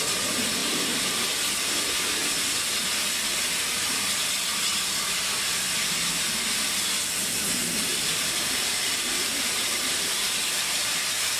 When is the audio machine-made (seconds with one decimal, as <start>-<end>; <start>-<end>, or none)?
0.6-1.1; 7.9-11.4